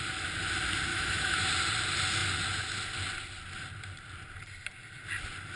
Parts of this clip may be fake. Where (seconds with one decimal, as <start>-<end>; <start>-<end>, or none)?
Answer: 0.9-1.5